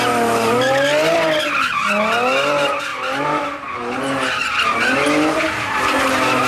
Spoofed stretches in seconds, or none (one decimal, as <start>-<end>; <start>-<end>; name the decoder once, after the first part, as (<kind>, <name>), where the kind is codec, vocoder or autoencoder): none